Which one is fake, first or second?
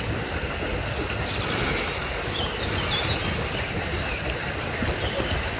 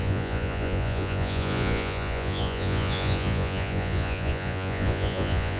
second